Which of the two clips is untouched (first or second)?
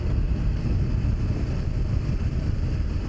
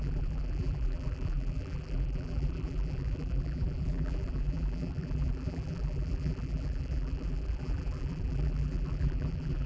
first